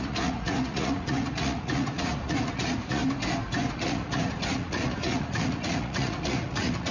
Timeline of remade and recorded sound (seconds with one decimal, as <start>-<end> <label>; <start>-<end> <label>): 0.0-3.0 remade; 3.0-3.7 recorded; 3.7-6.9 remade